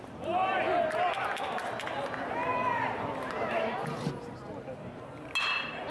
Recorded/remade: recorded